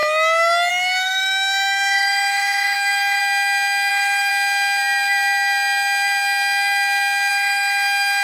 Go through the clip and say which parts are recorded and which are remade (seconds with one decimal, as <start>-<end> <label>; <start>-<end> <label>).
0.0-0.7 recorded; 0.7-3.2 remade; 3.2-3.9 recorded; 3.9-4.3 remade; 4.3-7.3 recorded; 7.3-8.2 remade